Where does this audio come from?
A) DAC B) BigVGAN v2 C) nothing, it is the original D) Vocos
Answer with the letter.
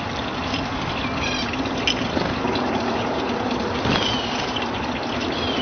C